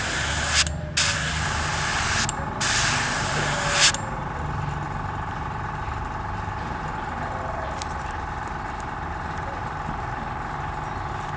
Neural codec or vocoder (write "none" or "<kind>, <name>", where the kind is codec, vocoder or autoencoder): none